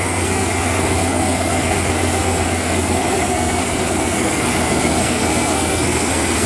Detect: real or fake fake